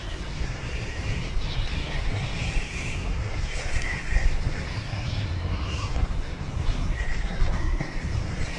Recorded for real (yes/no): no